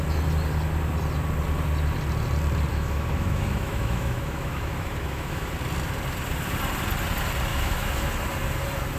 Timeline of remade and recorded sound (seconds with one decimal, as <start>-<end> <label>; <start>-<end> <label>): 0.0-2.7 recorded; 2.7-5.5 remade; 5.5-7.5 recorded; 7.5-8.0 remade; 8.0-9.0 recorded

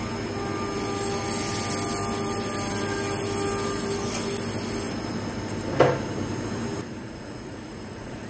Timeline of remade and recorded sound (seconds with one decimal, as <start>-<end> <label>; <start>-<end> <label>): 0.0-7.0 recorded; 7.0-8.3 remade

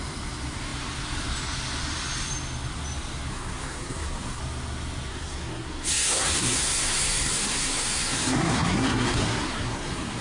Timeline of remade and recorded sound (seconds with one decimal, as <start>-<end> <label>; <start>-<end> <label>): 0.0-3.3 recorded; 3.3-4.4 remade; 4.4-5.1 recorded; 5.1-10.2 remade

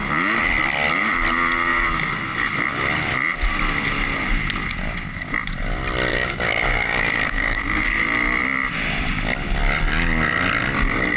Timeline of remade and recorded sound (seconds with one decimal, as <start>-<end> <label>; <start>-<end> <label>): 0.0-6.1 recorded; 6.1-8.0 remade; 8.0-11.2 recorded

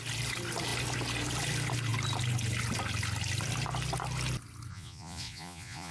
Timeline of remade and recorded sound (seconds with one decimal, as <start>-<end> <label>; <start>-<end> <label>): 0.0-4.7 recorded; 4.7-5.9 remade

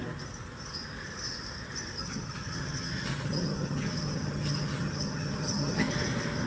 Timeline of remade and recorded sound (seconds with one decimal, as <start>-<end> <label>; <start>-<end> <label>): 0.0-2.0 recorded; 2.0-5.9 remade; 5.9-6.5 recorded